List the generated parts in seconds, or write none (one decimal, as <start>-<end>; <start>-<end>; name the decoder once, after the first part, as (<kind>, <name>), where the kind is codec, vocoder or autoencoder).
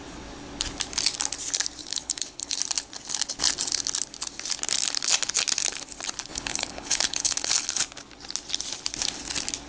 1.8-2.6 (codec, HILCodec); 6.3-7.8